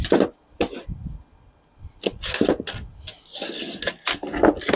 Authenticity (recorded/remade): recorded